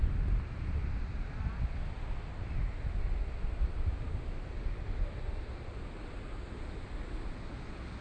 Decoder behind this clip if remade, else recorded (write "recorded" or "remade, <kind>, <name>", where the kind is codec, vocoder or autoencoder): recorded